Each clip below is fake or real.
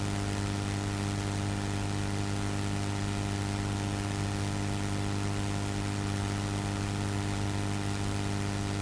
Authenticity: real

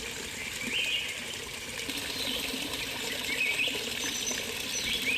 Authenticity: real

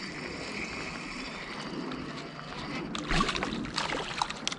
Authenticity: real